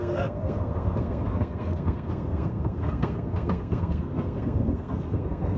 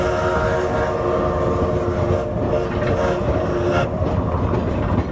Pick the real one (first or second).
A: second